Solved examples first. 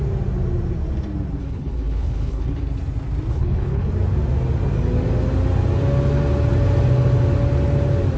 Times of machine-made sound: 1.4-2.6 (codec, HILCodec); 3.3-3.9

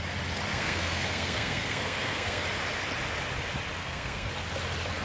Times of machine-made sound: 0.5-2.4 (codec, SNAC); 3.8-4.3

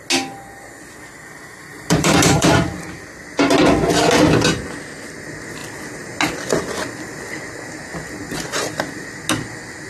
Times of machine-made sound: 1.7-2.8 (vocoder, BigVGAN v2)

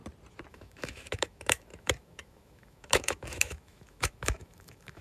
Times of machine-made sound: 0.5-5.0 (autoencoder, DAC-VAE)

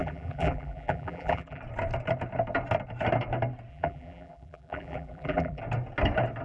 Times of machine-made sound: 0.0-1.6 (vocoder, BigVGAN v2); 3.7-5.6

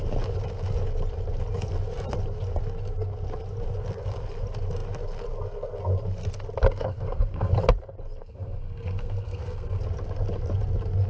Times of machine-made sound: 6.7-7.5 (codec, SNAC); 8.2-9.8

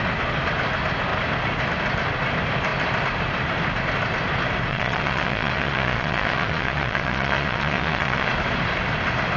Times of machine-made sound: 4.7-8.3 (vocoder, Vocos)

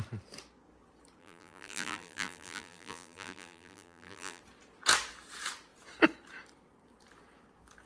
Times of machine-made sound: 1.2-4.4 (vocoder, BigVGAN v2)